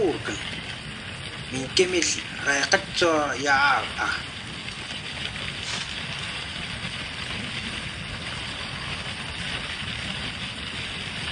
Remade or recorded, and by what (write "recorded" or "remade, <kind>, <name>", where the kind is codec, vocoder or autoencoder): recorded